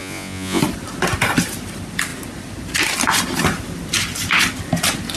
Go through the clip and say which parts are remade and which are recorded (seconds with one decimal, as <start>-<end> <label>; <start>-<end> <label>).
0.0-0.6 remade; 0.6-5.2 recorded